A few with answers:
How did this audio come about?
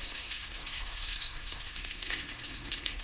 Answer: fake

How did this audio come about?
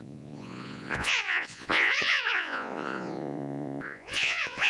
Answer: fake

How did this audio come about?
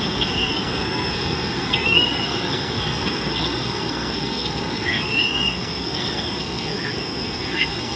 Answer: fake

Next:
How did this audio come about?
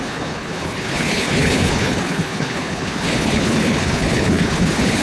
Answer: fake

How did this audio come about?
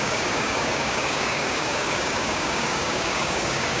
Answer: fake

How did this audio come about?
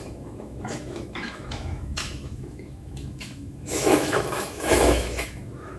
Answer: fake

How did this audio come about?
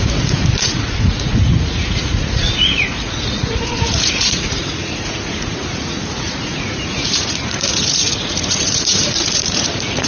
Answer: fake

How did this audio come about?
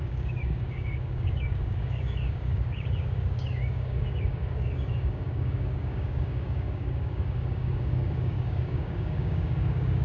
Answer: fake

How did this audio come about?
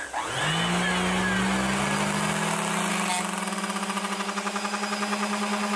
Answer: real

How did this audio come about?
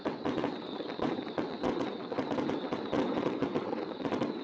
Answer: fake